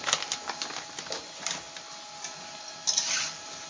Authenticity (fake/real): real